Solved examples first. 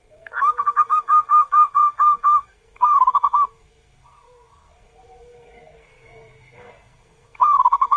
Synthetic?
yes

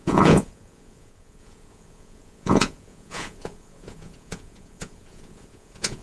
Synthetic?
yes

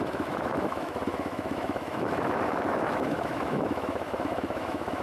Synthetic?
yes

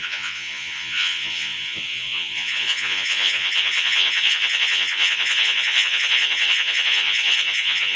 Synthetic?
yes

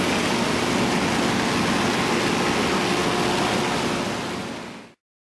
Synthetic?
no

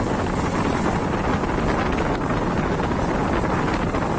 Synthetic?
no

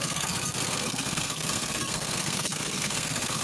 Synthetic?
yes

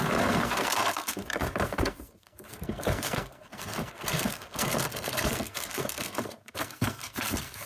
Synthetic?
yes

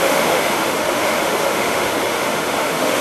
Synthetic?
yes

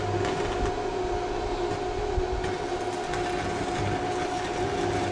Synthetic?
no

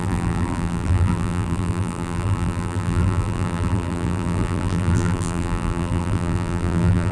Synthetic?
yes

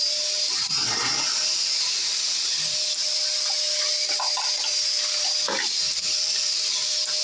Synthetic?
no